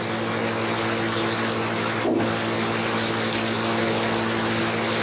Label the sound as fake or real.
real